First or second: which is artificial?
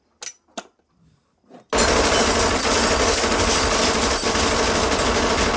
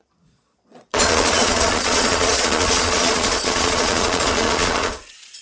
second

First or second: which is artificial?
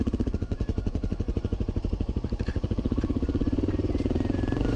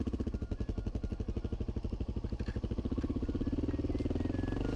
first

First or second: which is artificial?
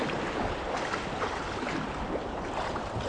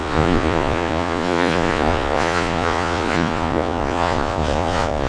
second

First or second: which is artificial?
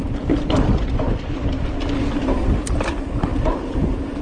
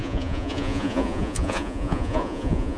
second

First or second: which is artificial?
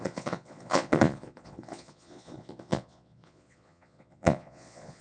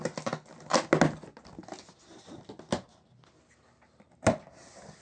first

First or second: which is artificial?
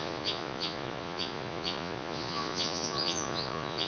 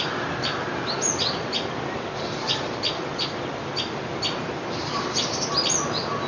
first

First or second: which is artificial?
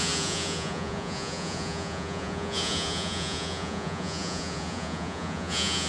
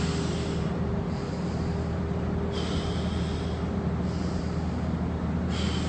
first